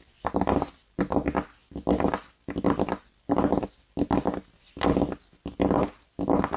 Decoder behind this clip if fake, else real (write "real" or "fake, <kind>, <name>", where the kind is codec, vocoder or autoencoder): real